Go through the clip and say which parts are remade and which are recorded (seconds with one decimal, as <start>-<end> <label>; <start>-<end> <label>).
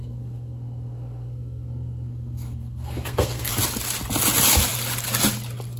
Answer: 0.0-3.5 remade; 3.5-5.8 recorded